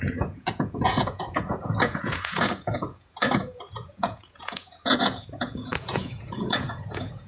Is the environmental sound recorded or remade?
remade